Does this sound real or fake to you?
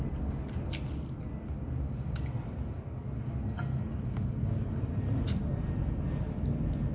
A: real